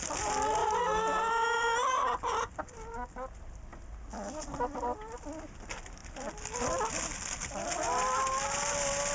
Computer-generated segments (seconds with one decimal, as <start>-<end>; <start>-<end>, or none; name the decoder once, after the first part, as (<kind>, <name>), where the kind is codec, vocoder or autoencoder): 0.6-1.2 (vocoder, BigVGAN v2)